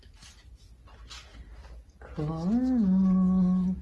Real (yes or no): yes